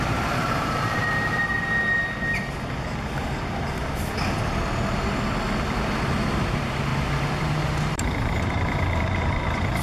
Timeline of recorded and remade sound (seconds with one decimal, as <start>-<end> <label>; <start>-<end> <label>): 0.0-1.5 remade; 1.5-6.1 recorded; 6.1-6.9 remade; 6.9-7.4 recorded; 7.4-9.8 remade

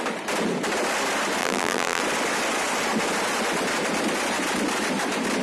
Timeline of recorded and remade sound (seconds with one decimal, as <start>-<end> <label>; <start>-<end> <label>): 0.0-1.4 recorded; 1.4-2.0 remade; 2.0-5.4 recorded

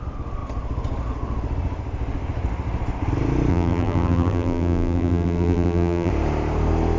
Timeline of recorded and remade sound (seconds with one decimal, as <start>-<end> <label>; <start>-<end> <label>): 0.0-3.5 recorded; 3.5-6.1 remade; 6.1-7.0 recorded

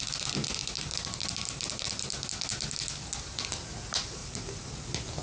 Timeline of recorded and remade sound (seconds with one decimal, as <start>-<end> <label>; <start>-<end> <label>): 0.0-0.6 recorded; 0.6-2.0 remade; 2.0-4.2 recorded; 4.2-4.7 remade; 4.7-5.2 recorded